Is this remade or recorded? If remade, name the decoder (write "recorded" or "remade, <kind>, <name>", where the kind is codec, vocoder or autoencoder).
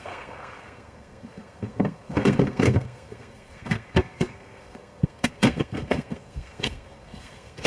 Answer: remade, codec, SNAC